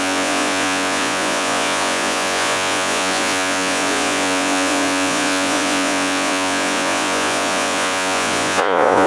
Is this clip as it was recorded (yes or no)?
no